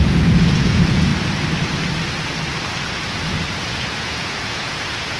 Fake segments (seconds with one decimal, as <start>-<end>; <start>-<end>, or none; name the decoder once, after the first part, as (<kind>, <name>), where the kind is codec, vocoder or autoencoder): 0.0-1.1 (vocoder, Vocos); 3.7-5.2